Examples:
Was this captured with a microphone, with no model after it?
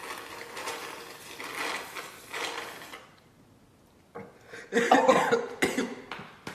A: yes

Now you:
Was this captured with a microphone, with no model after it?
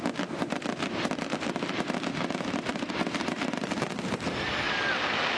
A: yes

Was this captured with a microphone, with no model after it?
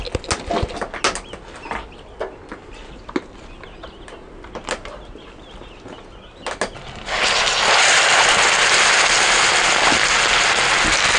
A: yes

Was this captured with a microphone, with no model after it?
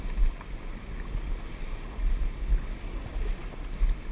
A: yes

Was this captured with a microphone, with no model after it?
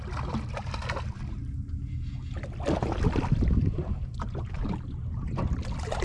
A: yes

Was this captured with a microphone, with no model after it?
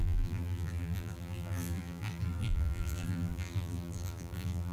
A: no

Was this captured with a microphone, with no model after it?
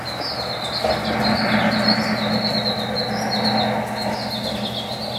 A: yes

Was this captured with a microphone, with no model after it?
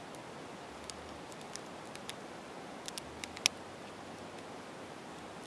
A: yes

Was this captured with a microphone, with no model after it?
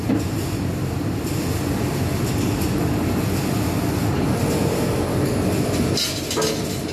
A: yes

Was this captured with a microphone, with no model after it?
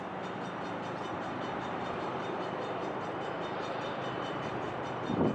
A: no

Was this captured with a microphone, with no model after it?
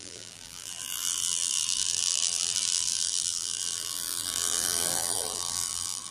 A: no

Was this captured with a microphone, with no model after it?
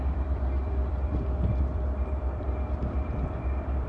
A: no